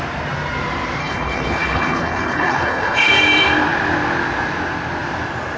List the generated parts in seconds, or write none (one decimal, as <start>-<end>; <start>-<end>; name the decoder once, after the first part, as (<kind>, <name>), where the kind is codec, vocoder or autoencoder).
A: 1.0-3.1 (codec, HILCodec)